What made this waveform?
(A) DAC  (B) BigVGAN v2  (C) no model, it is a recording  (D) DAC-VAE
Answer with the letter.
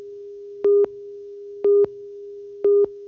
A